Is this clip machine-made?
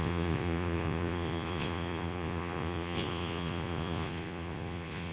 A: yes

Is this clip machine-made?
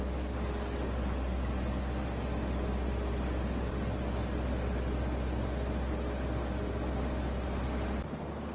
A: no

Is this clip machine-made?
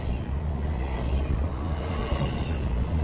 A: yes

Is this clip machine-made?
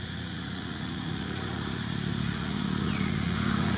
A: yes